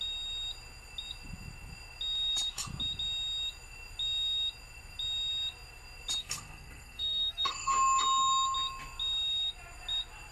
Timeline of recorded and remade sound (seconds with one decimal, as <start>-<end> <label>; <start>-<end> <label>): 0.0-6.2 recorded; 6.2-7.7 remade; 7.7-10.3 recorded